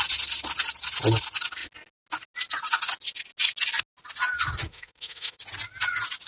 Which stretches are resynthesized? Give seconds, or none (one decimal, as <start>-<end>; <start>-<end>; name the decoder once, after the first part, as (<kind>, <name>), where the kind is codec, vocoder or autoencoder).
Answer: 4.7-5.4 (autoencoder, DAC-VAE)